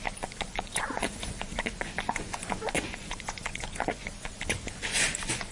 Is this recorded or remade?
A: remade